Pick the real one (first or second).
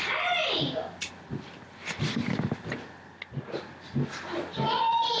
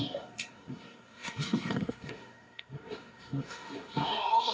first